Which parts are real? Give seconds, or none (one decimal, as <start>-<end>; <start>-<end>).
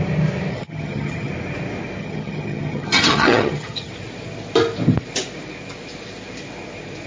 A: 0.0-0.5; 1.3-2.0; 3.9-7.1